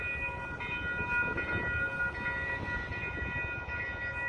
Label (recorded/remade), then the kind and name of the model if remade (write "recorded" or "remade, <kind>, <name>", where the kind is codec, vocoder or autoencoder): recorded